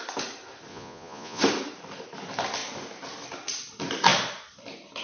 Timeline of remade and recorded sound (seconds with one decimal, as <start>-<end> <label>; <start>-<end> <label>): 0.0-0.7 recorded; 0.7-1.4 remade; 1.4-5.0 recorded

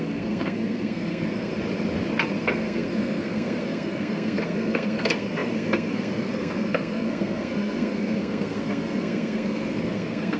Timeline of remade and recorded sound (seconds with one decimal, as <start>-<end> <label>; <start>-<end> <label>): 0.0-1.5 remade; 1.5-2.4 recorded; 2.4-10.4 remade

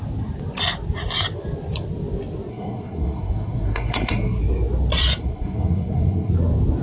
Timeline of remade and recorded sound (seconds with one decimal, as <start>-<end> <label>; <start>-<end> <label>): 0.0-2.5 recorded; 2.5-4.4 remade; 4.4-5.2 recorded; 5.2-6.3 remade; 6.3-6.8 recorded

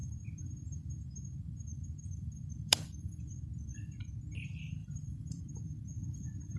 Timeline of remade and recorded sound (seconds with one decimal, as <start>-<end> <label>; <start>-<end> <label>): 0.0-4.0 remade; 4.0-4.8 recorded; 4.8-5.4 remade; 5.4-6.6 recorded

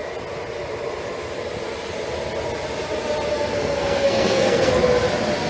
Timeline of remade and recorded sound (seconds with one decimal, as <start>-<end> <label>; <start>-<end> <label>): 0.0-3.3 recorded; 3.3-4.7 remade; 4.7-5.5 recorded

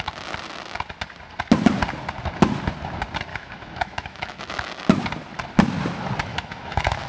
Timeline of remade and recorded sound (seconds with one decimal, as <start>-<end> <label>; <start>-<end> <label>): 0.0-3.3 recorded; 3.3-4.7 remade; 4.7-6.3 recorded; 6.3-7.1 remade

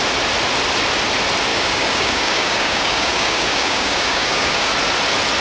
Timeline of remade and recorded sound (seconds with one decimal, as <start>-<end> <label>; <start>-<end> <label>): 0.0-1.5 recorded; 1.5-4.7 remade; 4.7-5.4 recorded

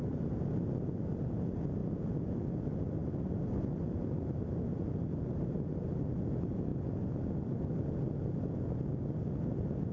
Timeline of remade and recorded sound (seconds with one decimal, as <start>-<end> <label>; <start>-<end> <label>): 0.0-1.8 recorded; 1.8-2.3 remade; 2.3-9.9 recorded